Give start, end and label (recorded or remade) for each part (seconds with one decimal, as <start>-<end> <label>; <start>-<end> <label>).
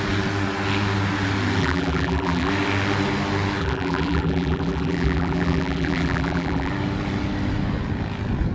0.0-1.6 recorded; 1.6-2.5 remade; 2.5-3.6 recorded; 3.6-6.7 remade; 6.7-8.5 recorded